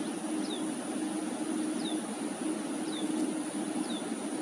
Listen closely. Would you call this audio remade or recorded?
recorded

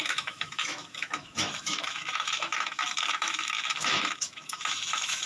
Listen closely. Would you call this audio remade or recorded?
remade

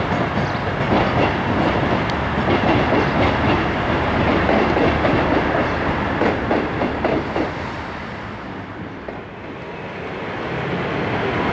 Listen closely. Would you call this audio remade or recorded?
recorded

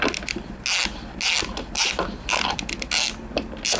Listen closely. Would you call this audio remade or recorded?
recorded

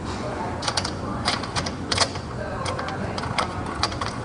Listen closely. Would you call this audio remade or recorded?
remade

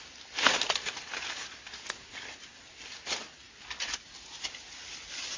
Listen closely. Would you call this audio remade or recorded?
recorded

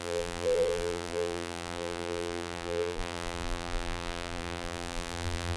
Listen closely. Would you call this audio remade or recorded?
remade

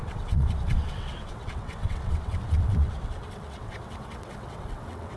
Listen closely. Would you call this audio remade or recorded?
remade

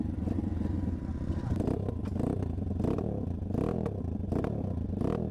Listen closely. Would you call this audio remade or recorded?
recorded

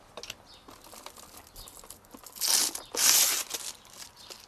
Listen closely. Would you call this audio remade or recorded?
recorded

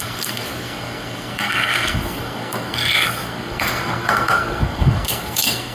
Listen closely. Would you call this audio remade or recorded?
remade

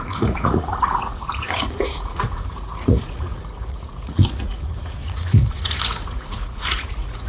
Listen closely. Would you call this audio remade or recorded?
remade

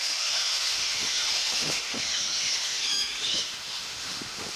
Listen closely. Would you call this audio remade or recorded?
remade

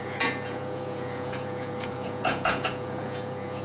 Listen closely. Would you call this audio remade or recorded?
remade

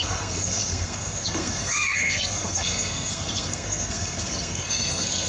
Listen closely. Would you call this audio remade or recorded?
remade